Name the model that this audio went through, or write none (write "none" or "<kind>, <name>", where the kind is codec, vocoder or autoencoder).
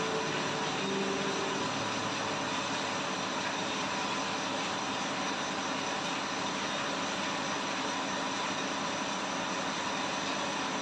none